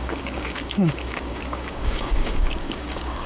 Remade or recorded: remade